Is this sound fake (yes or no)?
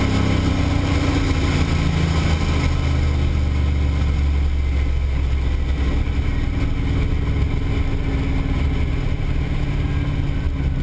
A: no